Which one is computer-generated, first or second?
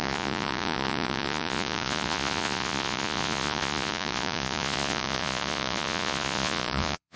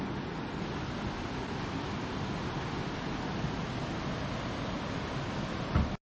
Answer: first